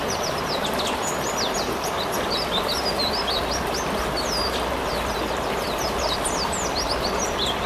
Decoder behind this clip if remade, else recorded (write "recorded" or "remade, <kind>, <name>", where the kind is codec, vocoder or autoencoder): recorded